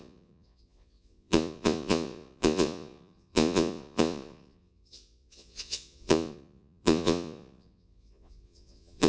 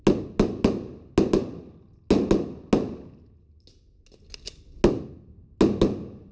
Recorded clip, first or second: second